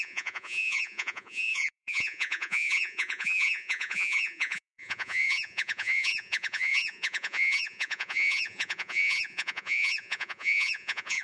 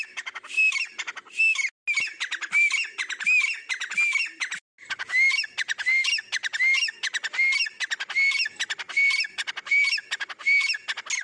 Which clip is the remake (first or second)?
first